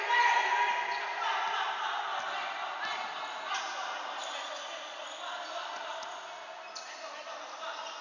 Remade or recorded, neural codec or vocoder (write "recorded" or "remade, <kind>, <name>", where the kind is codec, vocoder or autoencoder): recorded